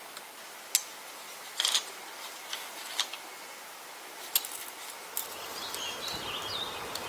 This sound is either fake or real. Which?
real